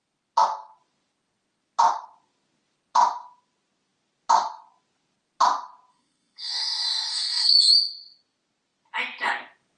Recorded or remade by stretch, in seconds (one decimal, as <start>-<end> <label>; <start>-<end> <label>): 0.0-5.9 recorded; 5.9-6.5 remade; 6.5-7.1 recorded; 7.1-7.6 remade; 7.6-9.8 recorded